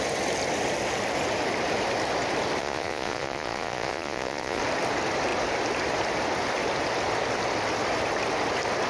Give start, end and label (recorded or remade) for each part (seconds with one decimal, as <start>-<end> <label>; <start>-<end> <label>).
0.0-2.6 recorded; 2.6-4.6 remade; 4.6-8.9 recorded